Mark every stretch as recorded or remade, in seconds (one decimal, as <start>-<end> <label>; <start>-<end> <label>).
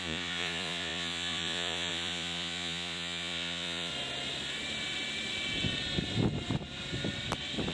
0.0-3.9 remade; 3.9-7.7 recorded